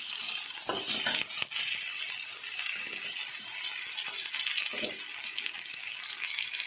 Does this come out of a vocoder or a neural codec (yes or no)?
no